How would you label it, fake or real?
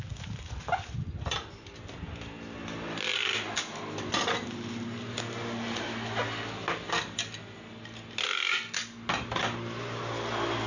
real